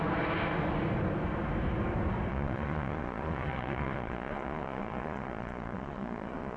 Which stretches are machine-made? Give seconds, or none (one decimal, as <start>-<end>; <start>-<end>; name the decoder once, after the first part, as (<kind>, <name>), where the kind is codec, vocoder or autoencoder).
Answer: 2.3-6.6 (vocoder, Vocos)